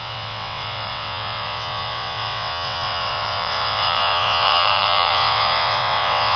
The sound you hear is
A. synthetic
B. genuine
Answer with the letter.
A